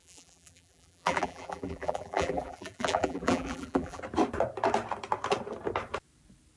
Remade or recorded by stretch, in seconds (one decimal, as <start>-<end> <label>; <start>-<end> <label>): 0.0-4.0 remade; 4.0-6.6 recorded